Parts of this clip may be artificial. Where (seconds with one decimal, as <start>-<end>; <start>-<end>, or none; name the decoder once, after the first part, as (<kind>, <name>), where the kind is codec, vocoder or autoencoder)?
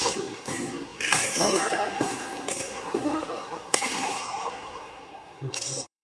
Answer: 0.0-6.0 (codec, SNAC)